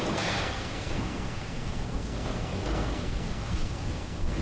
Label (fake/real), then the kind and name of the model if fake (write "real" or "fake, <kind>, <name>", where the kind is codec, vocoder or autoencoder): fake, codec, SNAC